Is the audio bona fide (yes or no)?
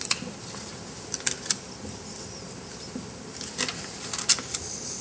yes